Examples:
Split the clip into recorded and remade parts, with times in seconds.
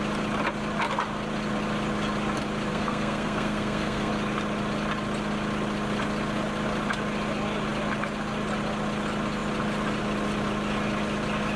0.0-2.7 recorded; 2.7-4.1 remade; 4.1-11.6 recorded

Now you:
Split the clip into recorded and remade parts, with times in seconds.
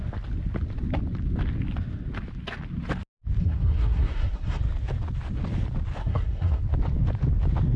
0.0-3.4 recorded; 3.4-4.6 remade; 4.6-6.0 recorded; 6.0-6.6 remade; 6.6-7.8 recorded